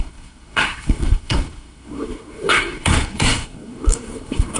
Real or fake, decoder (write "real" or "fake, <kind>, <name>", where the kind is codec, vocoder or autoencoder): fake, codec, SNAC